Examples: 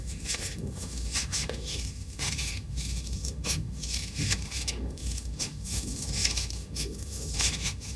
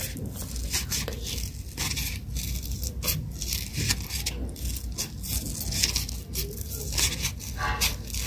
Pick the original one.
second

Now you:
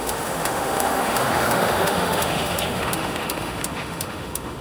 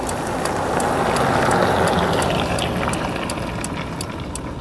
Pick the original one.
second